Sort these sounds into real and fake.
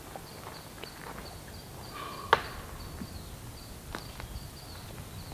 real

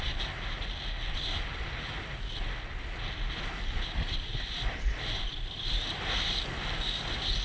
real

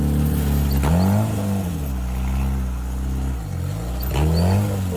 real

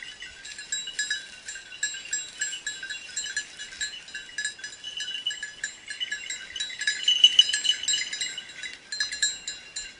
real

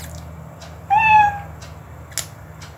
real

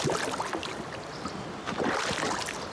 real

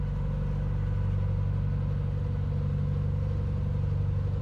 real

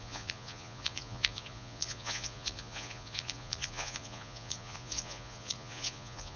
fake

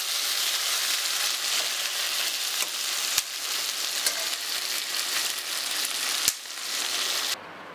real